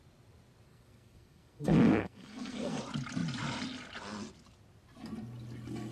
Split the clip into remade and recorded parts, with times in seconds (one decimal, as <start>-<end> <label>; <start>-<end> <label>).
0.0-0.7 recorded; 0.7-2.8 remade; 2.8-5.9 recorded